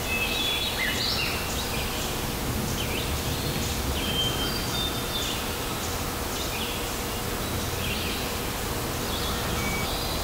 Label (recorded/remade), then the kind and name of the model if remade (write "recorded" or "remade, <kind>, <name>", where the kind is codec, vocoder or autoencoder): recorded